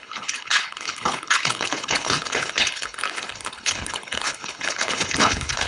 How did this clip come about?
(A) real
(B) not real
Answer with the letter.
B